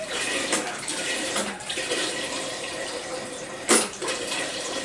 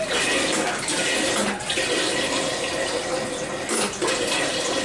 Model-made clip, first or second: first